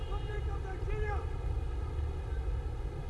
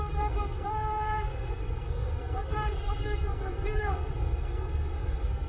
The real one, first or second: first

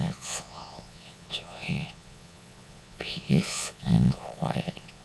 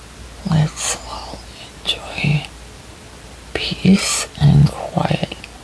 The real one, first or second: second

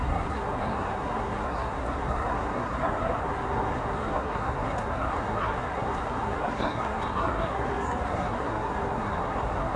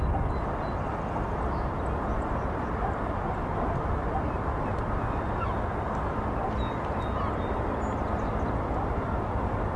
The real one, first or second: second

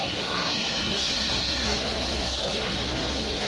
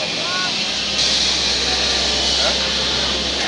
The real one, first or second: second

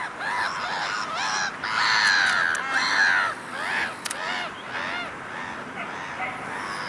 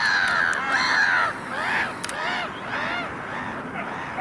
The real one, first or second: first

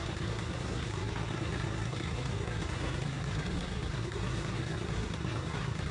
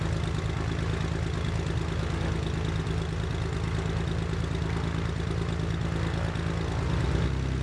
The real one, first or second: second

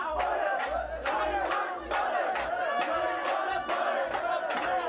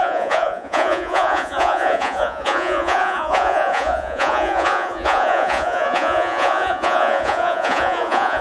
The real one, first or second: first